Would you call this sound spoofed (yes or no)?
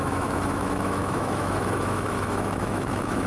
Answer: yes